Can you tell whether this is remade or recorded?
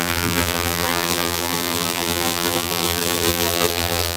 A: remade